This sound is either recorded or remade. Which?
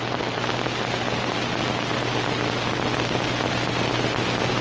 recorded